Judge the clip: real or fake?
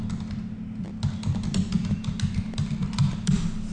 real